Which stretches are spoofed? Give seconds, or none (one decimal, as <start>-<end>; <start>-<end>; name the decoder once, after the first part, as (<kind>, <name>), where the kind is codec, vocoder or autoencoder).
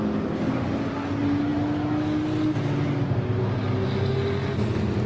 none